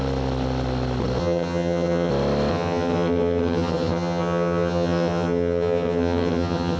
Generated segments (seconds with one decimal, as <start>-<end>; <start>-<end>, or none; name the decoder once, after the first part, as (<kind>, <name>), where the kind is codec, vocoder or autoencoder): 1.2-2.1 (vocoder, HiFi-GAN); 2.5-6.8